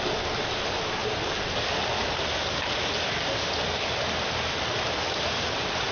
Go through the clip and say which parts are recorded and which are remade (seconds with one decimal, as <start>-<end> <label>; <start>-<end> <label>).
0.0-5.9 recorded